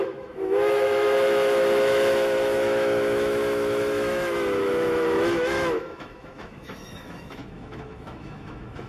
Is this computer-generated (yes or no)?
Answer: yes